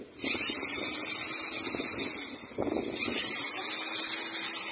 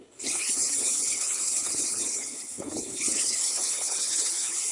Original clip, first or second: first